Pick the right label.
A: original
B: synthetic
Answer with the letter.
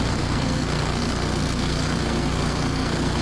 B